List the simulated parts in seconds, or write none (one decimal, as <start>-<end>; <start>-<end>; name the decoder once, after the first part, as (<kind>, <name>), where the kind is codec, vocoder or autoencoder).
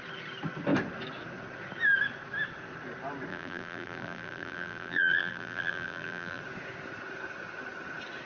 3.3-6.4 (vocoder, BigVGAN v2)